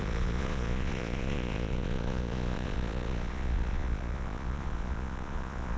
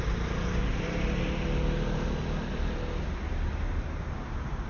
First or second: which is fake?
first